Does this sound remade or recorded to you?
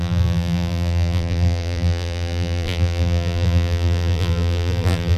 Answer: remade